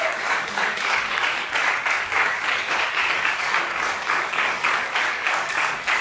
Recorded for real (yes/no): no